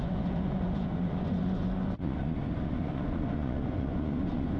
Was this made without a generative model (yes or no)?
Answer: no